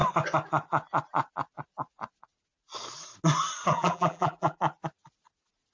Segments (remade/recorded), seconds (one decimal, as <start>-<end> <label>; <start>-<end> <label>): 0.0-3.7 recorded; 3.7-4.6 remade; 4.6-5.7 recorded